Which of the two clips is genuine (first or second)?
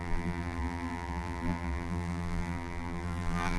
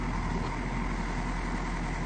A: second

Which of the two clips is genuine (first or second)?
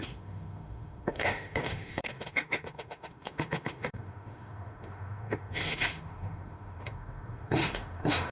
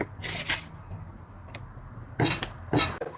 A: second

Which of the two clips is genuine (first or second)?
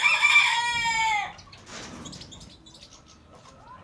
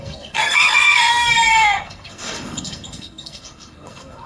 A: first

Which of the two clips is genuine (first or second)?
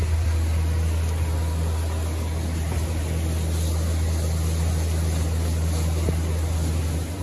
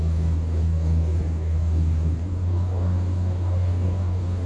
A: first